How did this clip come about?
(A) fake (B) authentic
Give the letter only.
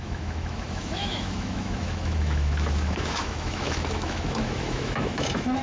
A